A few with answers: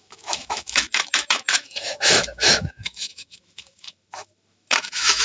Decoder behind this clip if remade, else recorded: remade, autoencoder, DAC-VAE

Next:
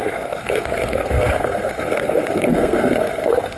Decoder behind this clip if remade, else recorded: remade, codec, SNAC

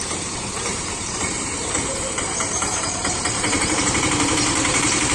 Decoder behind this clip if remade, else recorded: remade, vocoder, BigVGAN v2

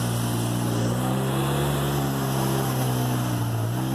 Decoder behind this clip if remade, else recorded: recorded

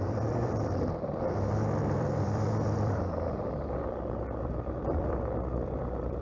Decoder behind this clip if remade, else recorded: remade, vocoder, BigVGAN v2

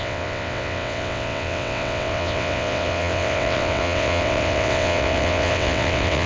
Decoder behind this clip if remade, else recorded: remade, vocoder, WaveNeXt